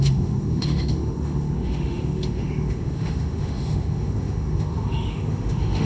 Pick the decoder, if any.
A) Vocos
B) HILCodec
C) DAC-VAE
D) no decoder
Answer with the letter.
C